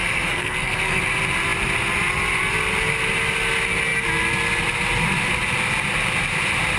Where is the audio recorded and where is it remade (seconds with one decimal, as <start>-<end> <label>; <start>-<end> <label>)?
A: 0.0-1.0 remade; 1.0-6.8 recorded

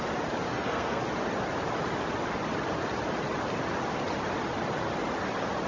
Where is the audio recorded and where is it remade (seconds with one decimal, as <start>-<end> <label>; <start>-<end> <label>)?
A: 0.0-0.5 recorded; 0.5-1.0 remade; 1.0-5.7 recorded